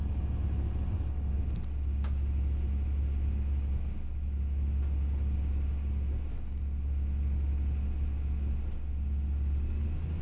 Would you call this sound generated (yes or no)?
no